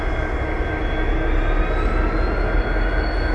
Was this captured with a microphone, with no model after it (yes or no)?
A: yes